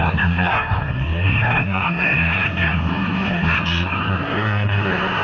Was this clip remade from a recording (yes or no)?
yes